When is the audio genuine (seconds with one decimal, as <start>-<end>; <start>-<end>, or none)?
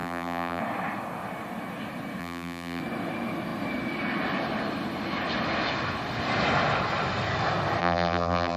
0.6-2.2; 2.8-7.8